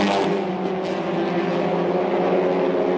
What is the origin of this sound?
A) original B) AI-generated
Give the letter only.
A